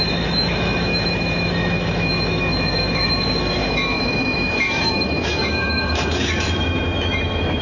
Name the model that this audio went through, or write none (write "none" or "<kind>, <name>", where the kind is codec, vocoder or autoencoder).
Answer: autoencoder, DAC-VAE